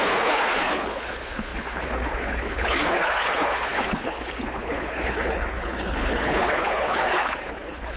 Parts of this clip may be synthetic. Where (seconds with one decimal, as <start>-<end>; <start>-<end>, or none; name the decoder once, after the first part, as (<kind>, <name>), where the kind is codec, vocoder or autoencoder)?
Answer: 0.0-8.0 (codec, HILCodec)